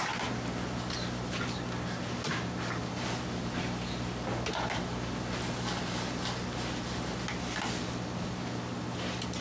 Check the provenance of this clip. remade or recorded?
recorded